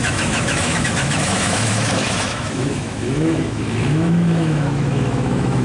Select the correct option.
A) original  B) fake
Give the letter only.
B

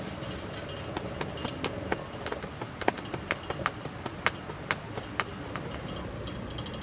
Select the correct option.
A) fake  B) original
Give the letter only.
B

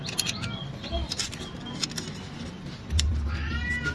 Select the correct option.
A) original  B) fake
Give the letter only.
A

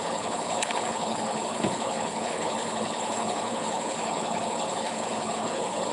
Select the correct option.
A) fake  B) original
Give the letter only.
A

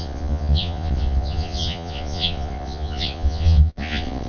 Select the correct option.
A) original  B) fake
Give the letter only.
B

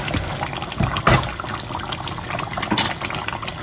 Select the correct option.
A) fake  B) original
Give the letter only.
B